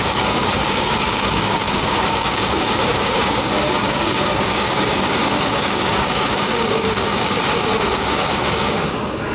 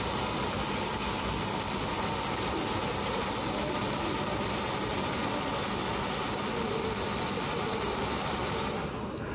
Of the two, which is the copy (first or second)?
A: first